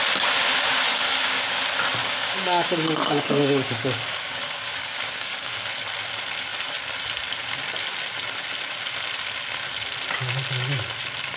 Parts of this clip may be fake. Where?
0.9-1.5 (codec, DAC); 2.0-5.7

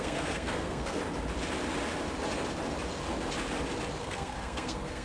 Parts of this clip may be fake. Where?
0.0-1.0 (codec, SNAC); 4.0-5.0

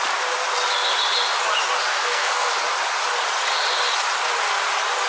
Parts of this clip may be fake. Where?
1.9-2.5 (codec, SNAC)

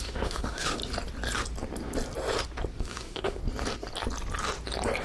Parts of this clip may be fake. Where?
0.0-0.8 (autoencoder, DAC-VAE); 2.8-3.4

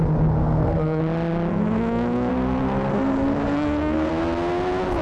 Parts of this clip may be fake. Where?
0.4-1.0 (codec, SNAC); 1.5-2.3; 2.9-4.1